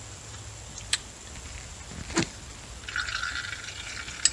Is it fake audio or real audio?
real